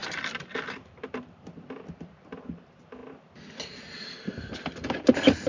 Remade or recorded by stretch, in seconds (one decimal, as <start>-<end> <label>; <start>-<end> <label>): 0.0-3.0 remade; 3.0-4.2 recorded; 4.2-5.5 remade